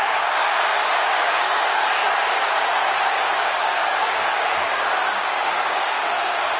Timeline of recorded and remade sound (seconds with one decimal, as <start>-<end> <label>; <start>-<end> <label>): 0.0-2.0 remade; 2.0-3.1 recorded; 3.1-6.6 remade